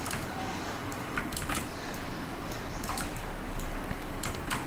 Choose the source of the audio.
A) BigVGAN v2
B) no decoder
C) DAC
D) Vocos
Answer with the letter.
C